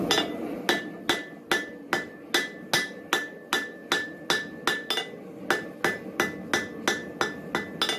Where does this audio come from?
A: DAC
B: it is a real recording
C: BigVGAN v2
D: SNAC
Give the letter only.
B